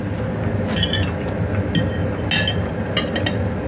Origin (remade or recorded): recorded